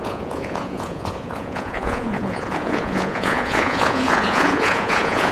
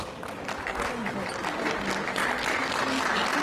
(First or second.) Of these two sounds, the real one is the second